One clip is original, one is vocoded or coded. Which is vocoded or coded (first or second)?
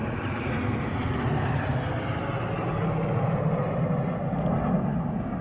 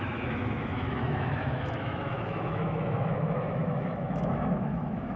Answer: second